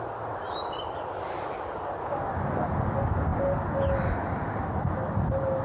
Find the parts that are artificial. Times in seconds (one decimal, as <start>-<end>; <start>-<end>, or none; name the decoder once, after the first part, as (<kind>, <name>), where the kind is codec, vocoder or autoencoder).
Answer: none